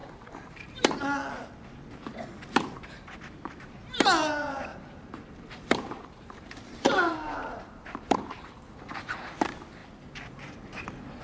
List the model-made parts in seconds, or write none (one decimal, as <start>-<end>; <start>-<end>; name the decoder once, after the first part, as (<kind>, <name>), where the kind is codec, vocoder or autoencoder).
0.0-1.0 (vocoder, BigVGAN v2); 4.7-9.3